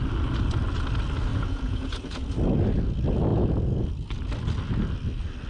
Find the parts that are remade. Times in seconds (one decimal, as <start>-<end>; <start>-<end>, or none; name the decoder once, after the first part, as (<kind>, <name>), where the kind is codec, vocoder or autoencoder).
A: 1.3-2.3 (vocoder, Vocos); 3.3-3.8